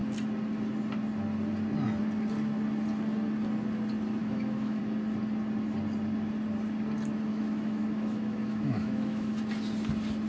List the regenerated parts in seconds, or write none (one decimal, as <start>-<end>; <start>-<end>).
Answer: 4.2-4.8; 7.3-9.4